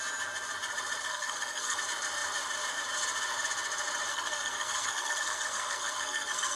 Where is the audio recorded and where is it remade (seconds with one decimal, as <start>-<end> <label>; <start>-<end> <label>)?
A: 0.0-1.1 recorded; 1.1-1.8 remade; 1.8-4.1 recorded; 4.1-6.6 remade

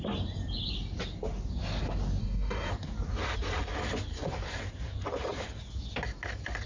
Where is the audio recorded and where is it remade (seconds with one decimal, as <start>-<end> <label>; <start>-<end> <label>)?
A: 0.0-2.2 recorded; 2.2-2.7 remade; 2.7-6.7 recorded

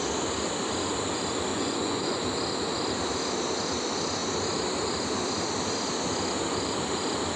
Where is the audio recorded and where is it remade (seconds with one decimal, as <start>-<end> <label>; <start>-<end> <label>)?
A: 0.0-1.5 recorded; 1.5-2.2 remade; 2.2-7.4 recorded

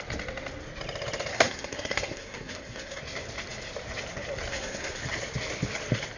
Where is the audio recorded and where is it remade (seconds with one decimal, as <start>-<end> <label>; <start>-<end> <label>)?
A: 0.0-1.3 recorded; 1.3-3.0 remade; 3.0-4.5 recorded; 4.5-5.0 remade; 5.0-6.2 recorded